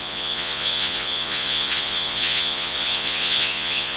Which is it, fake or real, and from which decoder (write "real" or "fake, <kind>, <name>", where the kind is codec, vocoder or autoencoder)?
fake, vocoder, Vocos